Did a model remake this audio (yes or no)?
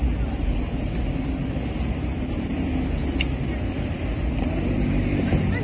no